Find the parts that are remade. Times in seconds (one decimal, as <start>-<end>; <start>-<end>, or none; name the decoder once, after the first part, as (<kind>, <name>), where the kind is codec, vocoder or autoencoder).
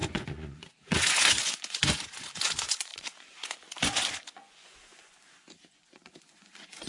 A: 0.0-6.9 (vocoder, Vocos)